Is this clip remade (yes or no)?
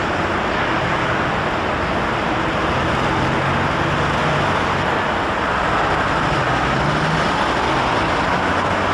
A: no